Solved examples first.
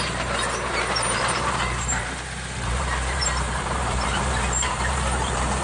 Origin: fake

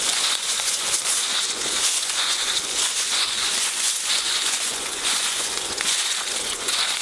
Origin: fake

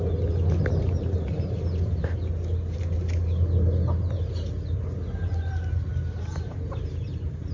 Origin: real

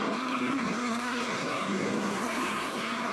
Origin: fake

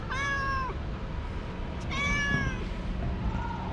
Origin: real